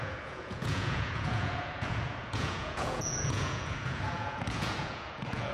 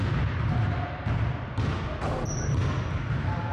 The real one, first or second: second